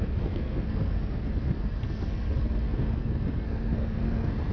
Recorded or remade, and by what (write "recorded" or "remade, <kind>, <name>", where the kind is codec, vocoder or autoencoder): remade, codec, SNAC